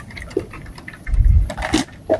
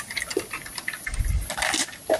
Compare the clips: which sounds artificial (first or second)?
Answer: first